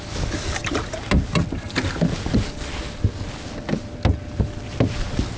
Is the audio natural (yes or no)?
yes